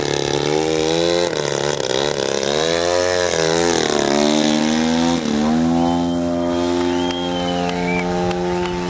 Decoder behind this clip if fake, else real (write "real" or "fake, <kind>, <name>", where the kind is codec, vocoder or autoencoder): real